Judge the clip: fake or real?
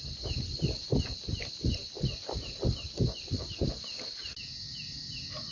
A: real